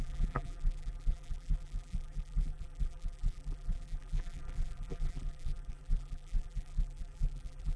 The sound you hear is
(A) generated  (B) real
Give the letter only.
A